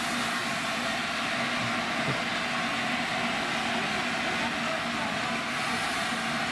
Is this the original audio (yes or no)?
yes